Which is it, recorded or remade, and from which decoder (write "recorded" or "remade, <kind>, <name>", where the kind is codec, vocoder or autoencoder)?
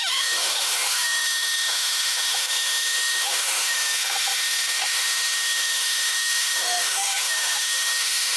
remade, autoencoder, DAC-VAE